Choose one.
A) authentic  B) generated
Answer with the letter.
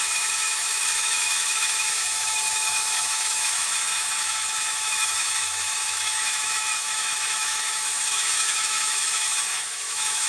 B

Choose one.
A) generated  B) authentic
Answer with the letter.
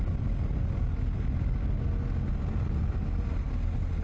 B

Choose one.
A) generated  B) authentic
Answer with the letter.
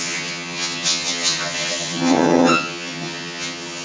A